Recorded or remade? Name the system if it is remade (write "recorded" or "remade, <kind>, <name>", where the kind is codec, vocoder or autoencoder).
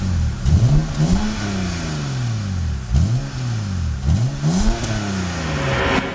recorded